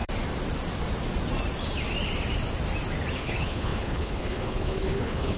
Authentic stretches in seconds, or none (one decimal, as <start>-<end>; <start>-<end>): 0.0-3.2